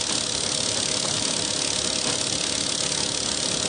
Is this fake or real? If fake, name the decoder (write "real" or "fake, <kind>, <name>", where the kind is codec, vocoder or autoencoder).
real